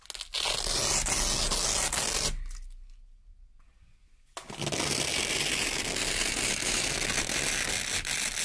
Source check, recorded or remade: recorded